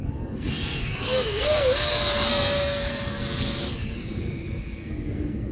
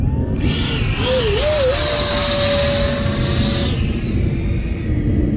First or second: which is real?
second